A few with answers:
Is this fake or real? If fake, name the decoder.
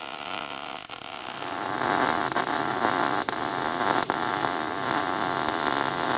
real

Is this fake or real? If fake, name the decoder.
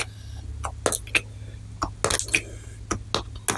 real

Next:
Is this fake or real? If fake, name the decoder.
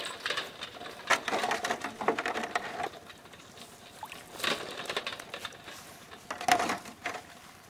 real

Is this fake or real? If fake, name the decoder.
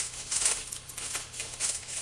fake, autoencoder, DAC-VAE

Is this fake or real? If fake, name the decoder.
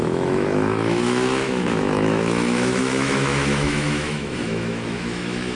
fake, autoencoder, DAC-VAE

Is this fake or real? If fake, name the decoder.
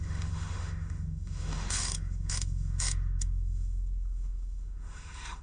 fake, autoencoder, DAC-VAE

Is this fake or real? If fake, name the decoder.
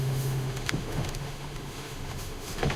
fake, autoencoder, DAC-VAE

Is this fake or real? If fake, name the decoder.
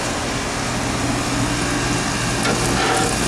real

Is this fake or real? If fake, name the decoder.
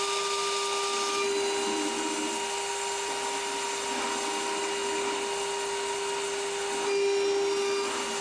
real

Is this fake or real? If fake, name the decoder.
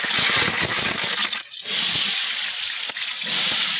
real